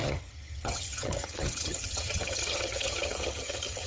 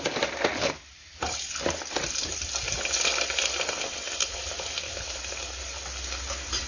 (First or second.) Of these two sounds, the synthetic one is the first